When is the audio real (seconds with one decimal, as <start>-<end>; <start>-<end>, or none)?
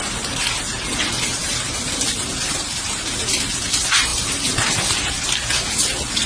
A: 0.0-1.4; 2.0-4.1; 4.7-6.3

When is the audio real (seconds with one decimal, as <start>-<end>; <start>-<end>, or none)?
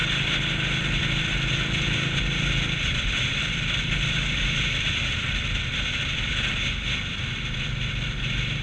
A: 0.0-8.6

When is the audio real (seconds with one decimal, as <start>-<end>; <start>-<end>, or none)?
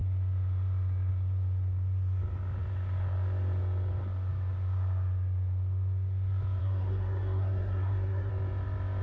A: 0.0-6.6; 8.3-9.0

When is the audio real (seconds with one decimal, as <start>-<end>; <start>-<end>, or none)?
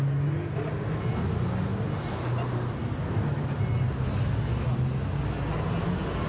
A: 0.0-6.3